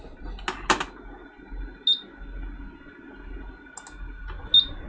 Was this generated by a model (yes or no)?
no